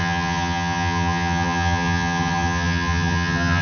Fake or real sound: fake